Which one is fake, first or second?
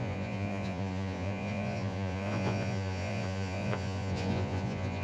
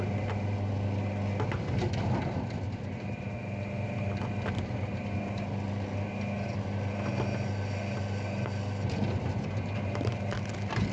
first